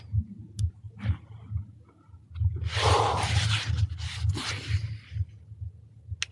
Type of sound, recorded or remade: recorded